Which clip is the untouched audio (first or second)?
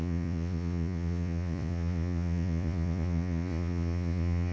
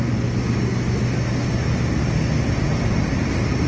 second